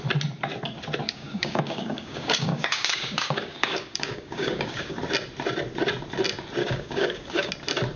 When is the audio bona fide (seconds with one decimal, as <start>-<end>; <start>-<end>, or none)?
0.0-1.0; 5.0-6.6; 7.5-8.0